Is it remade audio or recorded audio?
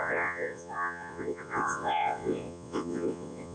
remade